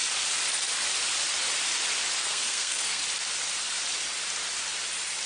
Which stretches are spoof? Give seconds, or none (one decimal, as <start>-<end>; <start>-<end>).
2.2-3.0